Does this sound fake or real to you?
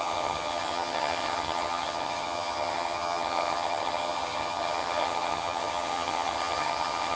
fake